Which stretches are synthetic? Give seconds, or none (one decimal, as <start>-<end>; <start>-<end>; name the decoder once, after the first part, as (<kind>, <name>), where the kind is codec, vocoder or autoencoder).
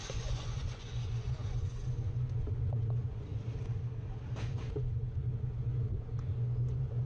0.0-3.3 (vocoder, Vocos); 4.4-7.1